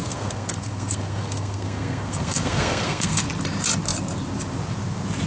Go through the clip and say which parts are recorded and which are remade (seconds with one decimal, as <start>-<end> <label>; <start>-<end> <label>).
0.0-3.2 remade; 3.2-5.3 recorded